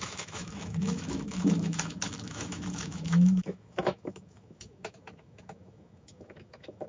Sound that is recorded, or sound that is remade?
remade